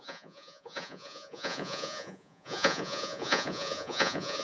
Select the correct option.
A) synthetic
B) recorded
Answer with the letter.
A